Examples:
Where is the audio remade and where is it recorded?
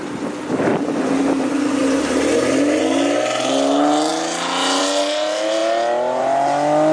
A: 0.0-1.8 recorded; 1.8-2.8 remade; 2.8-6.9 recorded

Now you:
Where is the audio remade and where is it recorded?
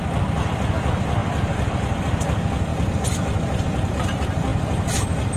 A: 0.0-1.2 recorded; 1.2-2.0 remade; 2.0-5.4 recorded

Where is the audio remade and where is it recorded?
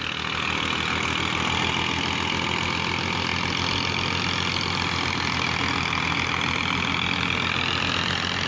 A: 0.0-8.5 recorded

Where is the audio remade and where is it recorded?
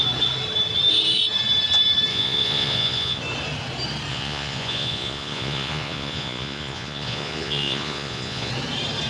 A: 0.0-2.1 recorded; 2.1-3.2 remade; 3.2-4.1 recorded; 4.1-8.5 remade; 8.5-9.1 recorded